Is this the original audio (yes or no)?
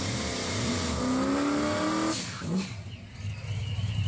yes